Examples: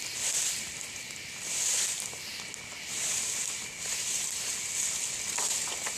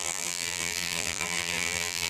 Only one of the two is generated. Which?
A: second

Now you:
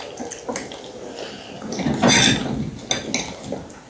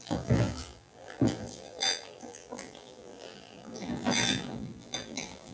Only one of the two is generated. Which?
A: second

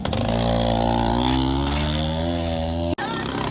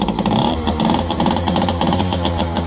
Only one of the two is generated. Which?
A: second